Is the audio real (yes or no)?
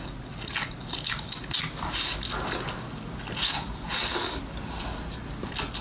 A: yes